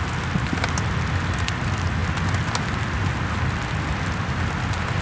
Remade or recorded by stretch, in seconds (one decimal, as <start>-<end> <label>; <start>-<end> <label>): 0.0-5.0 recorded